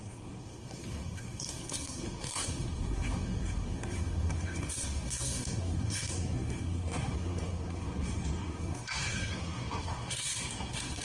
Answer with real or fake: fake